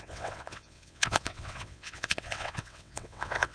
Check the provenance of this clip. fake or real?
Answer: fake